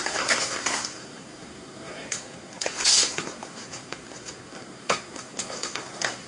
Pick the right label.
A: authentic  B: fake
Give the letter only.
B